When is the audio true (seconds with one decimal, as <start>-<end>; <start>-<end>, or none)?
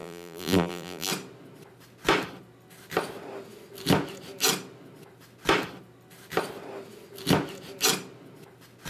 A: 1.1-8.9